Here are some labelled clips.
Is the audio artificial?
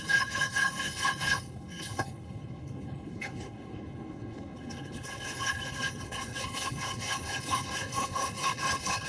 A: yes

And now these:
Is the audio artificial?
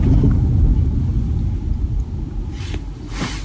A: no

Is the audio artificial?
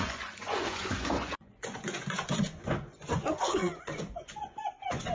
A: yes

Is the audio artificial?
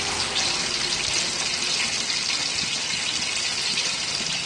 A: no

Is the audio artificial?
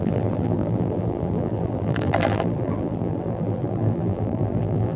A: yes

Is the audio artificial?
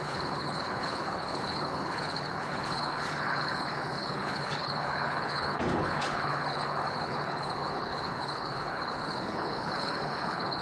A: yes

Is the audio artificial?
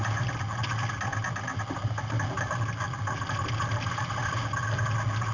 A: no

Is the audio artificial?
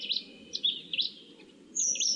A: no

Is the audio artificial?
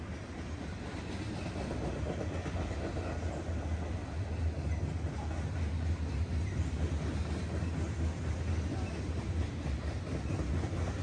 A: no